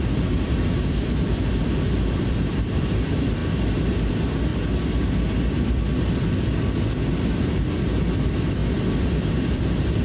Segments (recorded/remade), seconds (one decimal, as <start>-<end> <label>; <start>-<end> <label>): 0.0-3.4 remade; 3.4-4.1 recorded; 4.1-4.5 remade; 4.5-5.7 recorded; 5.7-8.6 remade; 8.6-9.4 recorded; 9.4-10.0 remade